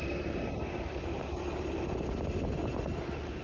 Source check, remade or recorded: recorded